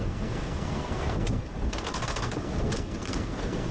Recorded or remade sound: remade